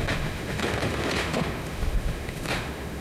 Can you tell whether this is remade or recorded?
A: remade